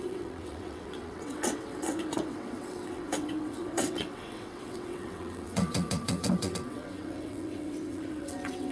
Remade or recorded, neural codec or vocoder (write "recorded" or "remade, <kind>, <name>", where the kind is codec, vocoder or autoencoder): remade, vocoder, WaveNeXt